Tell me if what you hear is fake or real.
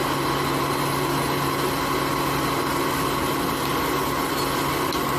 real